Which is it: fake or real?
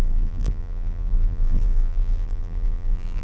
fake